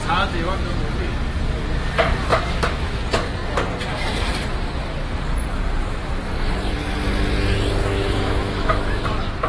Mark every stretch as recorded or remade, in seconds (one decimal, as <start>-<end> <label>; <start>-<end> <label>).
0.0-2.3 recorded; 2.3-3.0 remade; 3.0-7.8 recorded; 7.8-9.0 remade; 9.0-9.5 recorded